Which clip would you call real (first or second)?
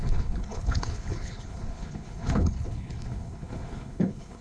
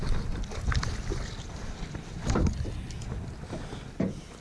second